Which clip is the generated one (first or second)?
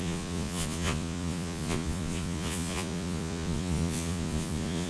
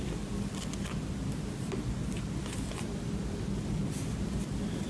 first